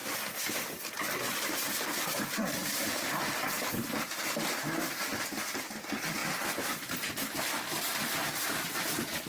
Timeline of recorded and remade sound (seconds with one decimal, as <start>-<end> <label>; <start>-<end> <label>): 0.0-2.6 remade; 2.6-4.2 recorded; 4.2-5.1 remade; 5.1-5.8 recorded; 5.8-6.2 remade; 6.2-6.7 recorded; 6.7-9.3 remade